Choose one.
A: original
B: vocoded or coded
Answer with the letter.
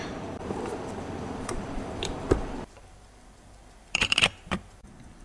B